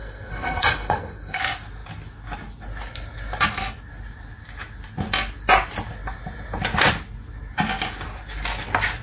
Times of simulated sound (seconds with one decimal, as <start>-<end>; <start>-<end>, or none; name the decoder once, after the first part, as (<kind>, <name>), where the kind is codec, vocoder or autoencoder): 0.0-1.4 (codec, SNAC)